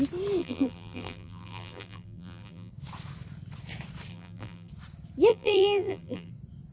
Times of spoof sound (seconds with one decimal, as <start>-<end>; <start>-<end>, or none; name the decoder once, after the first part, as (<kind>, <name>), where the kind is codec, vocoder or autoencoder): 0.4-2.7 (vocoder, BigVGAN v2); 4.1-4.7; 5.3-6.3